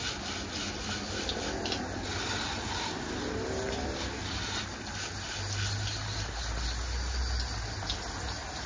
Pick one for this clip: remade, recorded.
recorded